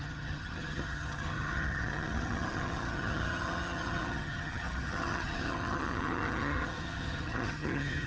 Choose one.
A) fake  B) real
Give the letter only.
A